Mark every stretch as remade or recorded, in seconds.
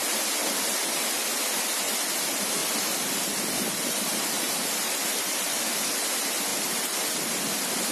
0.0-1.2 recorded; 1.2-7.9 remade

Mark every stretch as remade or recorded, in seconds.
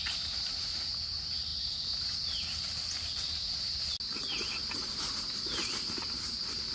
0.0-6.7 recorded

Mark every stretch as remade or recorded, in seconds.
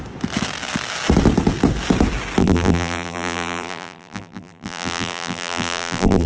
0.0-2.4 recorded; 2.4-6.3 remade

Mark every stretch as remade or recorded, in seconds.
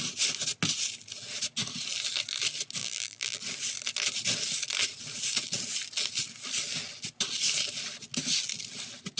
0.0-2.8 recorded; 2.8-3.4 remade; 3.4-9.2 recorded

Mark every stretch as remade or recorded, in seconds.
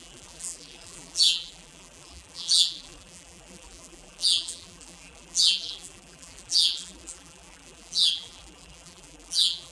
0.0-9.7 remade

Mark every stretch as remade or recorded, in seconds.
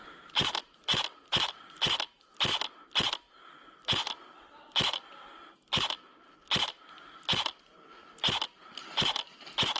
0.0-9.8 recorded